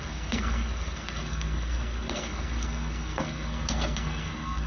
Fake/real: fake